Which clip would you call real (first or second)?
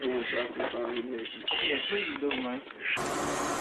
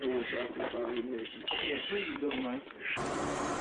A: first